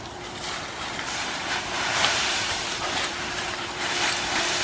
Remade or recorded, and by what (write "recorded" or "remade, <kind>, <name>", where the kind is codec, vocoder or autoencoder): remade, vocoder, BigVGAN v2